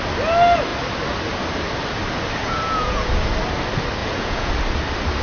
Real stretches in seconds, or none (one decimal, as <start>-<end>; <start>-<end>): 0.0-2.4; 3.1-4.0; 4.5-5.2